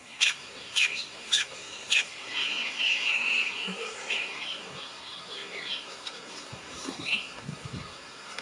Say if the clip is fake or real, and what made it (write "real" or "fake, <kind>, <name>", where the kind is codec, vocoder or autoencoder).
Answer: fake, codec, SNAC